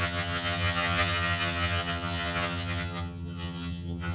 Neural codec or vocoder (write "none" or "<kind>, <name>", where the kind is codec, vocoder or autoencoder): vocoder, HiFi-GAN